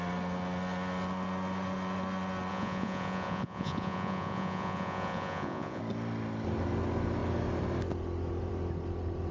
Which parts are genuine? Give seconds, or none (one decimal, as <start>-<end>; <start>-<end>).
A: 0.0-2.5; 5.8-9.3